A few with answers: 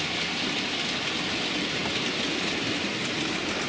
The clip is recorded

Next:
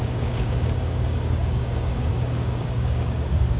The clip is remade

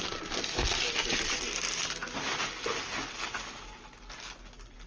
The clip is recorded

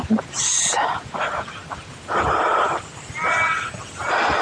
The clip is recorded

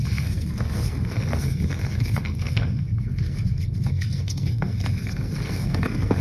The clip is remade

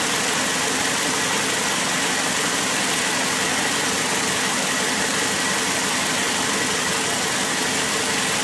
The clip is recorded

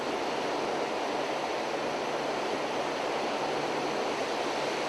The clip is recorded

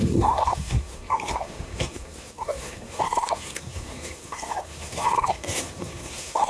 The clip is remade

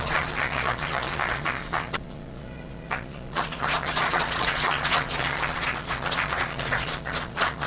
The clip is remade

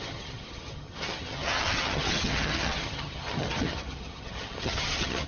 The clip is remade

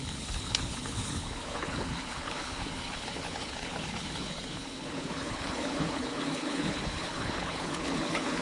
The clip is remade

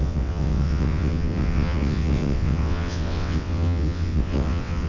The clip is remade